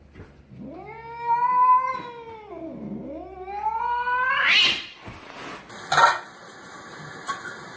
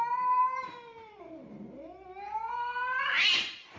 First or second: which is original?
first